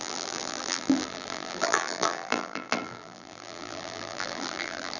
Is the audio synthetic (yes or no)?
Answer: yes